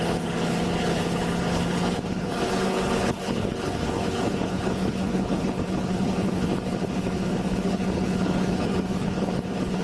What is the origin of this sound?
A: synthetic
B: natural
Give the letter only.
A